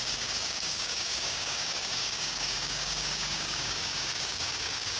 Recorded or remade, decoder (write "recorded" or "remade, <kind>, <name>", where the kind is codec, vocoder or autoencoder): remade, codec, DAC